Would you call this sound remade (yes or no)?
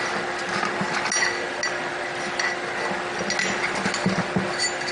no